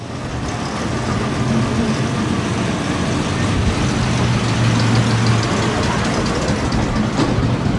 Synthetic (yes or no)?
no